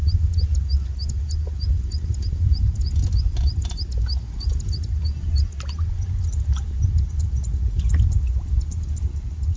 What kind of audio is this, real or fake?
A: real